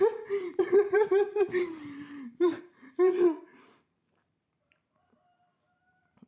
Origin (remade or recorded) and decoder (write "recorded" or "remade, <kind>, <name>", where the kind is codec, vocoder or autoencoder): remade, vocoder, BigVGAN v2